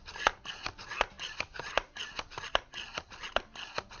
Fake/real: real